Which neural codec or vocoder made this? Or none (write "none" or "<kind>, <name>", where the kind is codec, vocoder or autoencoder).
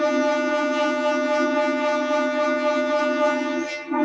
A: vocoder, HiFi-GAN